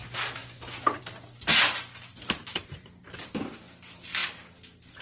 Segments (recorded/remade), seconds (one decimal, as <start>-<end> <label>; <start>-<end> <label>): 0.0-5.0 recorded